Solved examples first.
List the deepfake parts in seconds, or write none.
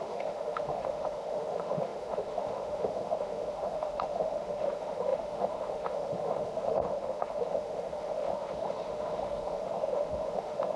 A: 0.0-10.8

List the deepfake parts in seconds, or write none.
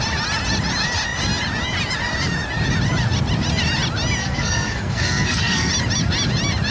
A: 4.2-5.7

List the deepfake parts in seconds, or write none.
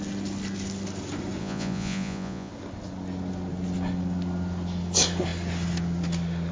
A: 1.4-2.5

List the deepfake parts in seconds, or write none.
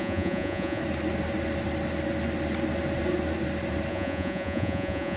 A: 0.0-0.8; 3.9-5.2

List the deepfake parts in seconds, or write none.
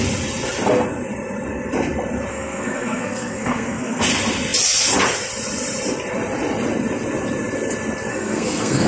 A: 2.3-4.0; 8.1-8.9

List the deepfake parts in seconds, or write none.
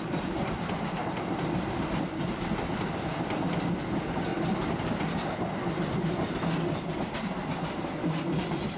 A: none